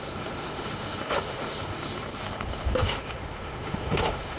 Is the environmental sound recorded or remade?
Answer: remade